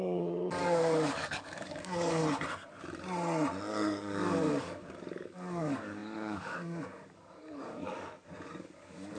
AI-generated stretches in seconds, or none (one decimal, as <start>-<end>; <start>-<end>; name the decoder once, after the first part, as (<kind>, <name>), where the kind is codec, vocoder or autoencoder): 0.0-2.2 (codec, DAC); 3.7-9.2